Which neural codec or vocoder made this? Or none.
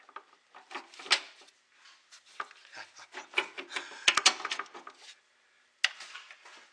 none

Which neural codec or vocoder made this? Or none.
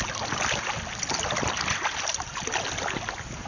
none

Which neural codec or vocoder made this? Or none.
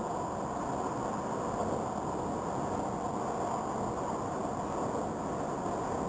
none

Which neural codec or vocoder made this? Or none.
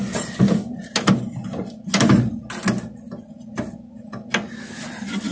none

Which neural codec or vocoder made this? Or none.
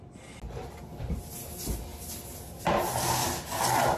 none